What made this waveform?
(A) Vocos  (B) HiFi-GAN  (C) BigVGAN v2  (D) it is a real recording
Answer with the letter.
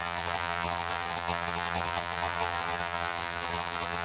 C